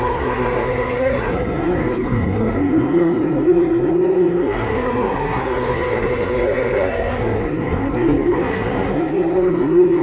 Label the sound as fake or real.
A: fake